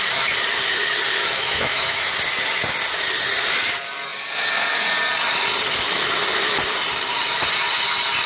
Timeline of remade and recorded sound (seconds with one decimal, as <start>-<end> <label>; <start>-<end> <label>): 0.0-1.2 recorded; 1.2-2.1 remade; 2.1-8.3 recorded